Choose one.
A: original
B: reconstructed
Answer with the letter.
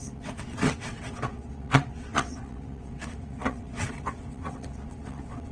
B